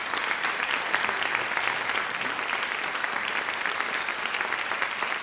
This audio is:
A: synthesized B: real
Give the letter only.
A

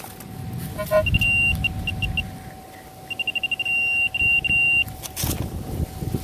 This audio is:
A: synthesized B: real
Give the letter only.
B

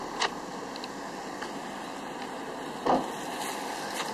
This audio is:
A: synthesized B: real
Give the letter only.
B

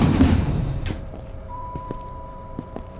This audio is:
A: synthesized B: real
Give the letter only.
A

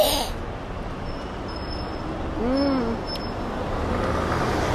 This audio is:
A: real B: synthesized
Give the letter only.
A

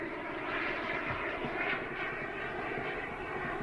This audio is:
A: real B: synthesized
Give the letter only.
B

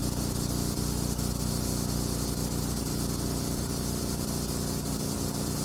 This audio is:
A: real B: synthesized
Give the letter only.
A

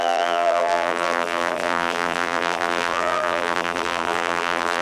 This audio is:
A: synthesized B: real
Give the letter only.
A